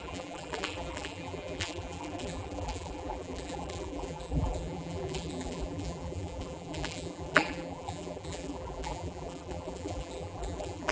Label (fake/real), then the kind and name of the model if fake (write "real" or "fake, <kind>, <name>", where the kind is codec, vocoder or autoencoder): fake, vocoder, BigVGAN v2